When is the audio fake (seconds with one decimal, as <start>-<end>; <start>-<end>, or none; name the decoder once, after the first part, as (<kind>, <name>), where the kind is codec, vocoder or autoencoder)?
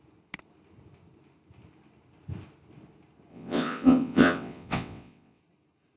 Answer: 3.3-5.4 (vocoder, WaveNeXt)